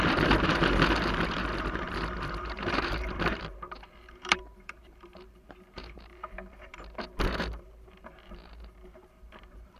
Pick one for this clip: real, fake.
fake